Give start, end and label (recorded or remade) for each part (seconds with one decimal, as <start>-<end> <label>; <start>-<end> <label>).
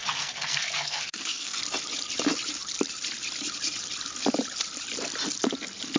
0.0-1.6 remade; 1.6-6.0 recorded